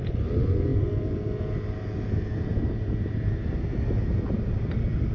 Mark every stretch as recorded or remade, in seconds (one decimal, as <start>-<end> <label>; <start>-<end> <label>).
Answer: 0.0-5.1 recorded